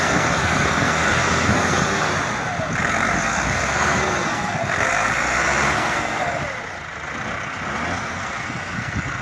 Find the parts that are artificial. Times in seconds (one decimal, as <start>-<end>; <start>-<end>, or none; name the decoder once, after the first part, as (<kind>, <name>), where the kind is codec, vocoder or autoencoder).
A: 0.0-2.1 (codec, SNAC); 2.8-6.4; 8.0-9.2